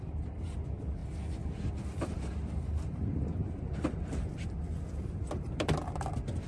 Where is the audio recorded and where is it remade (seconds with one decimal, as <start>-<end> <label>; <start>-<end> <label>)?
0.0-1.0 remade; 1.0-1.7 recorded; 1.7-6.5 remade